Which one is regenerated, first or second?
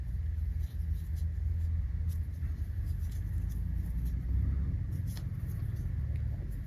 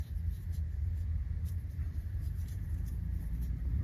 second